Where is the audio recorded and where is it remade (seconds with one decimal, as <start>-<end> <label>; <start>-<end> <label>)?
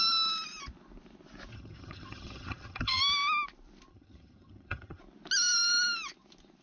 0.0-1.5 recorded; 1.5-3.0 remade; 3.0-3.9 recorded; 3.9-5.0 remade; 5.0-6.6 recorded